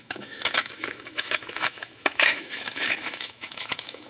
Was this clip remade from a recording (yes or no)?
yes